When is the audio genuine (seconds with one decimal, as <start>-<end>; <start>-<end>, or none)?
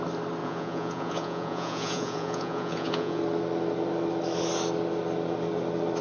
0.0-0.4; 3.2-6.0